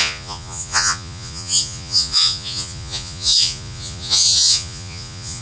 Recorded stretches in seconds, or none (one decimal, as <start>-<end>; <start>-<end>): none